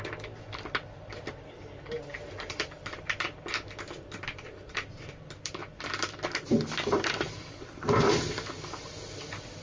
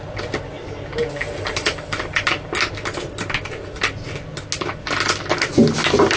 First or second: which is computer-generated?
first